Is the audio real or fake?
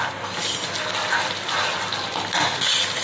real